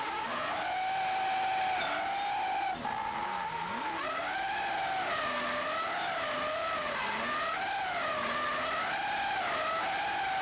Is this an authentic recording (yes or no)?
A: yes